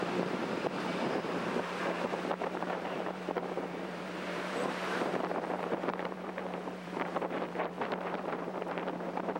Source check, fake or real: fake